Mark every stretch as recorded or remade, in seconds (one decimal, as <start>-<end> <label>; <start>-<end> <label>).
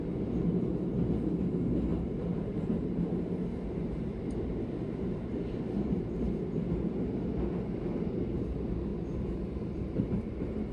0.0-1.9 recorded; 1.9-6.3 remade; 6.3-10.7 recorded